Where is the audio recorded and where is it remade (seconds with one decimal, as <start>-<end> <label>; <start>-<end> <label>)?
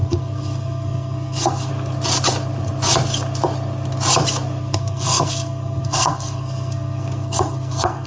0.0-1.7 remade; 1.7-4.6 recorded; 4.6-8.1 remade